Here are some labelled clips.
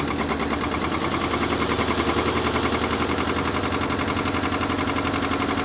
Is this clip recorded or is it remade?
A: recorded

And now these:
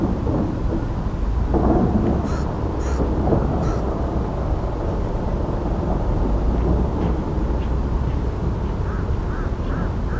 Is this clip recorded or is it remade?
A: recorded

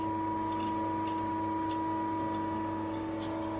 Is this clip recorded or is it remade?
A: recorded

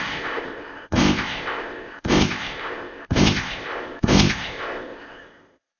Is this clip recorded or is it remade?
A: remade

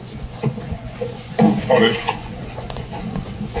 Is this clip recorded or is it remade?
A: remade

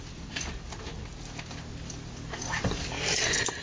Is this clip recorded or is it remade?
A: recorded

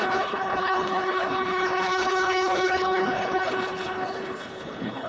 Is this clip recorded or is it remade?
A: remade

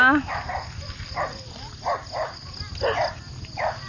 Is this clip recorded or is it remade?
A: recorded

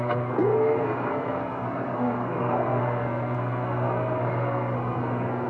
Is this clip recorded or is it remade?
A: remade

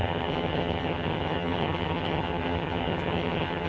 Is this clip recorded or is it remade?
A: remade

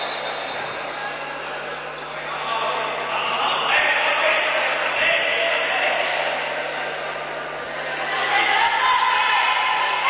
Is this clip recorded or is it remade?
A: recorded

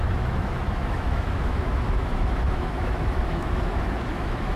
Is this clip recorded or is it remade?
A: remade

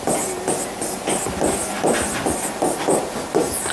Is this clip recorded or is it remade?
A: recorded